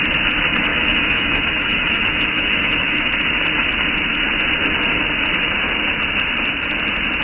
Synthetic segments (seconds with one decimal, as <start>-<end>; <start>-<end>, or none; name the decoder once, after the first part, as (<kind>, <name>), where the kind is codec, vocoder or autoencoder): 0.7-3.1 (autoencoder, DAC-VAE)